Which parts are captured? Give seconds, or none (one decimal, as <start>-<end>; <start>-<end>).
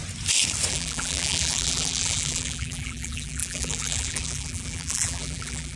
0.0-0.7